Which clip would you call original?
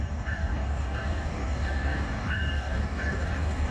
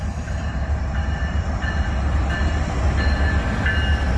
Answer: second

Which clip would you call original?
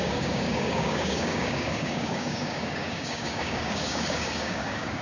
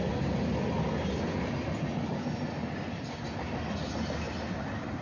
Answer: second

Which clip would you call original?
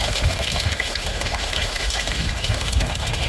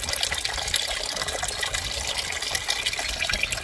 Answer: second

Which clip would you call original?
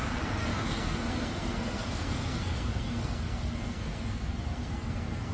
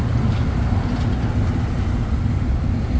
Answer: second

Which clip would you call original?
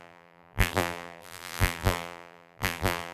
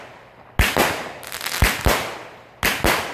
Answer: second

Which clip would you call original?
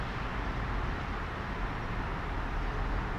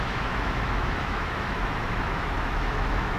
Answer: first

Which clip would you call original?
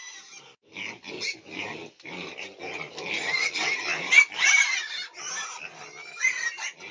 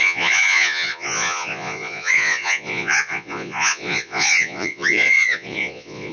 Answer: first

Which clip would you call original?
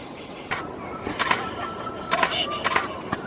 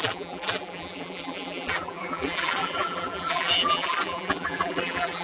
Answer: first